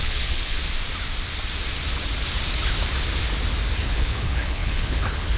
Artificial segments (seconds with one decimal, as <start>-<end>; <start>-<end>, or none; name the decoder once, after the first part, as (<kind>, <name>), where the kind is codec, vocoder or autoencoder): 0.0-0.6 (codec, HILCodec); 3.8-5.4